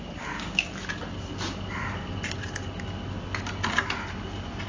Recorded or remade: recorded